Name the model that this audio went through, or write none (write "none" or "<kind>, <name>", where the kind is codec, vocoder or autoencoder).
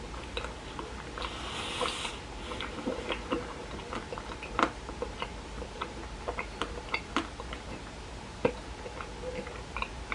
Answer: none